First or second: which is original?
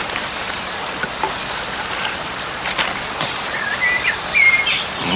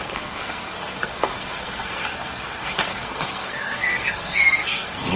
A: first